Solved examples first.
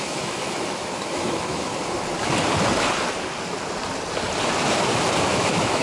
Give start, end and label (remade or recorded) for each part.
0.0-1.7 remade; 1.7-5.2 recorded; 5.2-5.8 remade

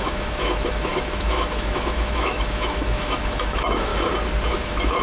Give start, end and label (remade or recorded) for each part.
0.0-3.9 remade; 3.9-4.5 recorded; 4.5-5.0 remade